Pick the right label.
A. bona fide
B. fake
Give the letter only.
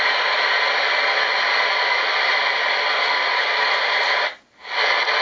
A